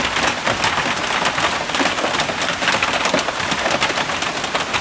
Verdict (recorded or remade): recorded